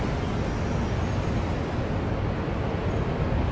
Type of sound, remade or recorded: recorded